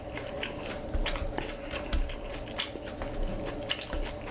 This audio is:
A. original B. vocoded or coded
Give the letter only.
A